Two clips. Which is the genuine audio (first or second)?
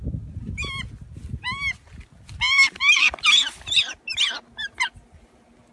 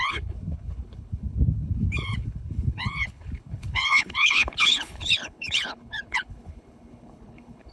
first